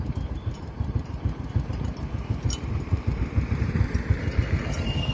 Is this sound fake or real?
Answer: fake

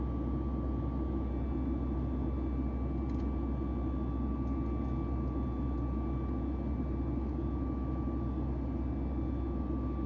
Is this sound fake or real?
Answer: real